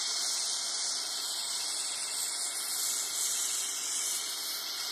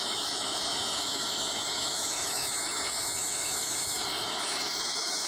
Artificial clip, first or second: second